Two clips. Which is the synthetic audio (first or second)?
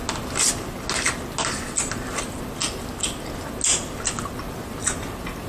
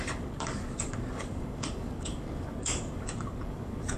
second